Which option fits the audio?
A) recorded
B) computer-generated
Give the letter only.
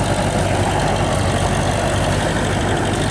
A